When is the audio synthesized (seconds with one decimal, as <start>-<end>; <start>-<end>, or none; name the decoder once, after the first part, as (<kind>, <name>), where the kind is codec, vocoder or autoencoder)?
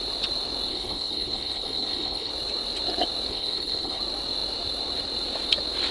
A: 0.7-2.3 (codec, HILCodec); 3.3-4.0